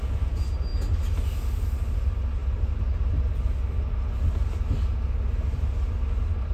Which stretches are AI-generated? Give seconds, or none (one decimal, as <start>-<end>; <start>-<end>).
none